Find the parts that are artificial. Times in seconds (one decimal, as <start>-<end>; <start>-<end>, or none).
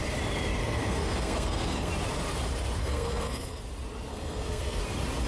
0.6-1.9; 2.8-3.6; 4.1-4.8